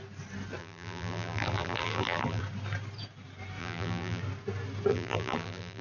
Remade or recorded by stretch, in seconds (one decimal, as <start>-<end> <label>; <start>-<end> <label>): 0.0-0.6 recorded; 0.6-2.4 remade; 2.4-3.6 recorded; 3.6-4.2 remade; 4.2-4.9 recorded; 4.9-5.8 remade